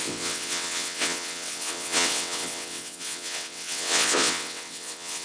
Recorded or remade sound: remade